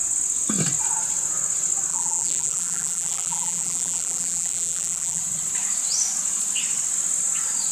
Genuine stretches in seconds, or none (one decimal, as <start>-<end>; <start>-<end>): 0.0-1.9; 5.2-7.7